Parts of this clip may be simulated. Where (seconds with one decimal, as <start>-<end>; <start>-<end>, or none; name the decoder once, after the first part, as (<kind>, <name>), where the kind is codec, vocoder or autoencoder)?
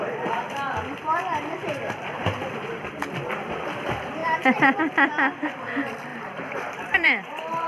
2.7-3.7 (vocoder, BigVGAN v2); 4.2-4.8; 6.1-7.3